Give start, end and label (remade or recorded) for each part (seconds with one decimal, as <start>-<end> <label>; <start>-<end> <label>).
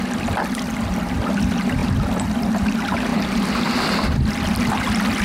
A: 0.0-3.1 recorded; 3.1-4.4 remade; 4.4-5.2 recorded